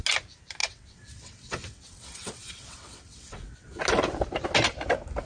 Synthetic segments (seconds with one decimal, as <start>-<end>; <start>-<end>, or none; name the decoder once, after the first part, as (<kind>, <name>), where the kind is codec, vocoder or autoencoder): 0.6-3.8 (vocoder, WaveNeXt)